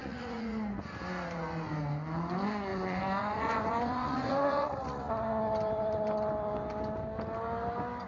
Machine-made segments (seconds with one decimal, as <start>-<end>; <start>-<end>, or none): 0.0-0.9; 2.7-5.1